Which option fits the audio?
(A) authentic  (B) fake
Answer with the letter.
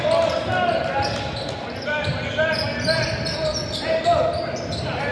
A